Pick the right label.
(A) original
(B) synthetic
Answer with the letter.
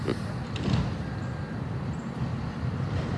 A